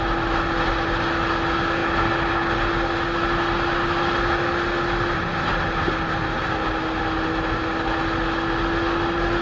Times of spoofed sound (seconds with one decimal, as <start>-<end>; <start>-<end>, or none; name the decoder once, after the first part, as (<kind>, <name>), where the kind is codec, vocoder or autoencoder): none